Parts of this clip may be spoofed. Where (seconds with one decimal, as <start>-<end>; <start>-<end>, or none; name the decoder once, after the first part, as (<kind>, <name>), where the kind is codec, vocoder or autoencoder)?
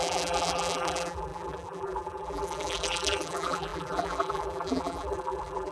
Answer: 0.0-5.7 (vocoder, BigVGAN v2)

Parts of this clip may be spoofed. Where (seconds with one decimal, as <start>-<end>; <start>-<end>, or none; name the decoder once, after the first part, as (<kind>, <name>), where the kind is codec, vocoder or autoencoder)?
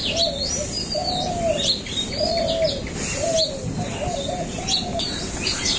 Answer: none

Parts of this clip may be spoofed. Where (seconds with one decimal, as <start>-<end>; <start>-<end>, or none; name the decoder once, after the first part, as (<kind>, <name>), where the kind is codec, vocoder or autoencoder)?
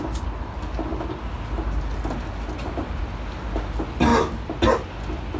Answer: none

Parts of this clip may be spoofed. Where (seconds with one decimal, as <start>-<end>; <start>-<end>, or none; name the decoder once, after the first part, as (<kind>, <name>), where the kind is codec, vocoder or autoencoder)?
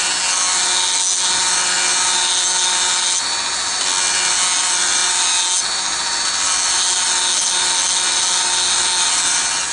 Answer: none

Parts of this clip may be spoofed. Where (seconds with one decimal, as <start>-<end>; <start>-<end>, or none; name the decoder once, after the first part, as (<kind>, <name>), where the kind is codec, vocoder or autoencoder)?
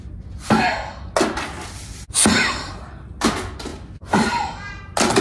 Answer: none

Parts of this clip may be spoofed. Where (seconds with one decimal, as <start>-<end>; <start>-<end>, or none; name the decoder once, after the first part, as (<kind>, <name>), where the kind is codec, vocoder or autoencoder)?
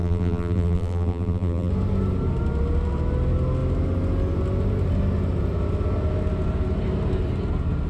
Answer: 0.0-1.7 (vocoder, BigVGAN v2)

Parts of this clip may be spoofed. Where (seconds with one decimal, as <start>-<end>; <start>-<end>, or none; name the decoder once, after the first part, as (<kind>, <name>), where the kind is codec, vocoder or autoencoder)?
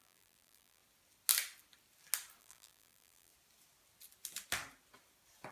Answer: 0.0-0.8 (vocoder, BigVGAN v2); 2.4-3.3